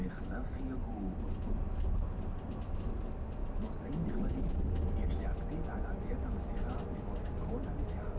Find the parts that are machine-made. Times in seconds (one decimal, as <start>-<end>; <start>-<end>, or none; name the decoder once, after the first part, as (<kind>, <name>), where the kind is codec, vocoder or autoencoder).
0.0-1.4 (vocoder, BigVGAN v2); 3.4-8.2